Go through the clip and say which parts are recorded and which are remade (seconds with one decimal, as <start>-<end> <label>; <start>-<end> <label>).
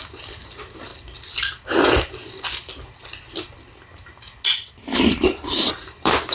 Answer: 0.0-0.9 remade; 0.9-4.7 recorded; 4.7-6.3 remade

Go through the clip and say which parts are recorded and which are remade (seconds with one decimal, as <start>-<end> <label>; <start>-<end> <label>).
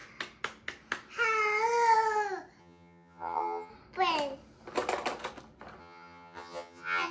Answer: 0.0-2.6 recorded; 2.6-3.7 remade; 3.7-5.8 recorded; 5.8-7.1 remade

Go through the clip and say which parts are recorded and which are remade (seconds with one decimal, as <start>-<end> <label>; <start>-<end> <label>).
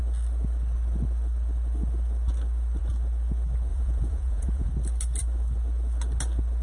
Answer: 0.0-3.7 recorded; 3.7-4.7 remade; 4.7-6.6 recorded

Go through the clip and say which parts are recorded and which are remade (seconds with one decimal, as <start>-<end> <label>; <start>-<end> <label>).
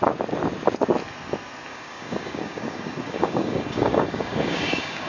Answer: 0.0-1.7 recorded; 1.7-5.1 remade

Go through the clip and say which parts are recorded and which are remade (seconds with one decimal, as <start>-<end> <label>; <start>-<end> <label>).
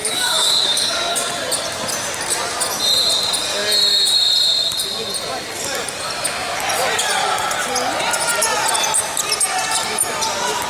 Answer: 0.0-1.3 remade; 1.3-10.7 recorded